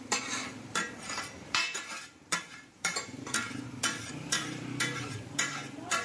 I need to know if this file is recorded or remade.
remade